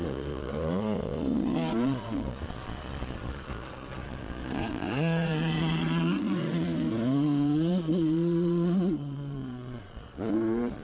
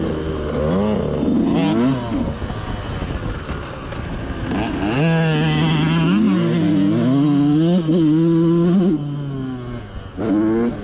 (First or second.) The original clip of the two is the second